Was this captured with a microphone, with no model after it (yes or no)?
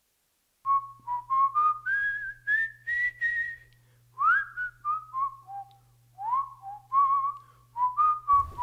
yes